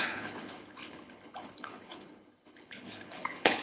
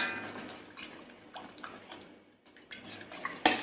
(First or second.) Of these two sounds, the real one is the second